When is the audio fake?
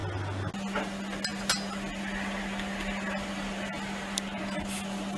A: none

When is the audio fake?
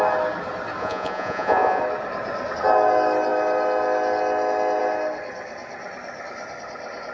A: 0.8-1.8 (vocoder, Vocos)